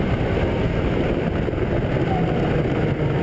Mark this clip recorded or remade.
recorded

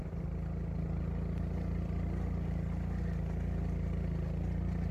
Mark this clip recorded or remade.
recorded